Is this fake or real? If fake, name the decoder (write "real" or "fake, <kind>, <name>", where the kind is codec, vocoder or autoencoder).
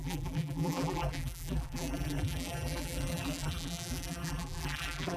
fake, vocoder, BigVGAN v2